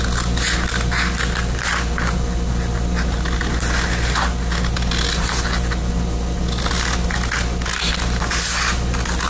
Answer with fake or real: real